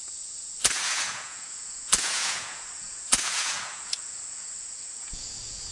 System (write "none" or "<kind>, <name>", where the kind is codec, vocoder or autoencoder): vocoder, Vocos